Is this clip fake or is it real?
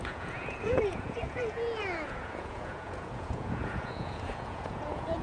fake